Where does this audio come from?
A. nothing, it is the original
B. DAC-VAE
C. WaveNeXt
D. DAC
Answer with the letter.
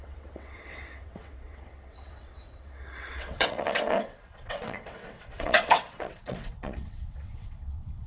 C